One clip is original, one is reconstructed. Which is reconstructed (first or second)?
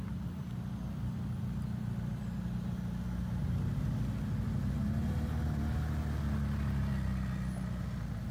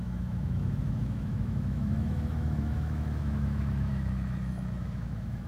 second